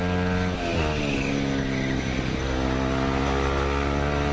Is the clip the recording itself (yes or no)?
yes